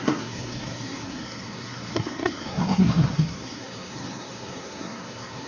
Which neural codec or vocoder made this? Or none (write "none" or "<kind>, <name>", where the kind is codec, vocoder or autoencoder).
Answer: codec, SNAC